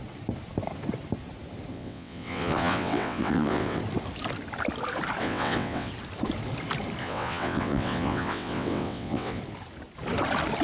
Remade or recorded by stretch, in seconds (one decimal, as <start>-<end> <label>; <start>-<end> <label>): 0.0-1.7 recorded; 1.7-3.8 remade; 3.8-5.2 recorded; 5.2-5.9 remade; 5.9-7.0 recorded; 7.0-9.4 remade; 9.4-10.6 recorded

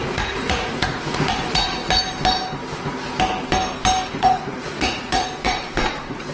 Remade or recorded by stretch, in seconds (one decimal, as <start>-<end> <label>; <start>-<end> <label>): 0.0-1.8 remade; 1.8-4.1 recorded; 4.1-6.3 remade

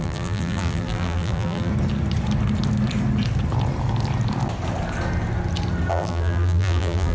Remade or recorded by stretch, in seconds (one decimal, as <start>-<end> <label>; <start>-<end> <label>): 0.0-1.7 remade; 1.7-5.9 recorded; 5.9-7.1 remade

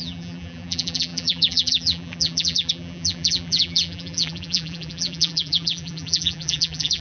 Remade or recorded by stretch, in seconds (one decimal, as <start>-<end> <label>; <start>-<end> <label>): 0.0-7.0 remade

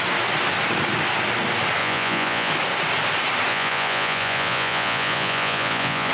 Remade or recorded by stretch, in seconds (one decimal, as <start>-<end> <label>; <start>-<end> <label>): 0.0-1.8 recorded; 1.8-2.5 remade; 2.5-3.5 recorded; 3.5-6.1 remade

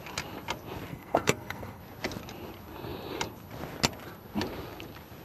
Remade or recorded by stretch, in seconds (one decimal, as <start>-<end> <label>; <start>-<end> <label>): 0.0-0.9 recorded; 0.9-1.8 remade; 1.8-5.2 recorded

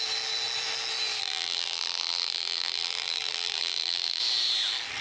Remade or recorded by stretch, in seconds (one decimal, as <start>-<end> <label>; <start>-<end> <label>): 0.0-1.2 recorded; 1.2-4.2 remade; 4.2-5.0 recorded